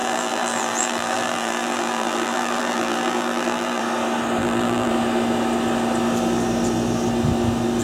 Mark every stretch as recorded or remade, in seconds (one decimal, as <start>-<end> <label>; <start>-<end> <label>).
0.0-3.8 remade; 3.8-4.4 recorded; 4.4-4.9 remade; 4.9-7.8 recorded